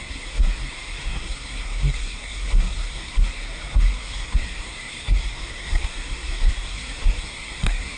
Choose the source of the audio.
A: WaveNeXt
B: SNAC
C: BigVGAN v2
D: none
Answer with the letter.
B